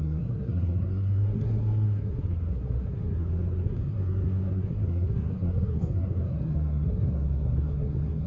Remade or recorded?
remade